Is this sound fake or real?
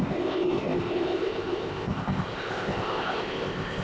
fake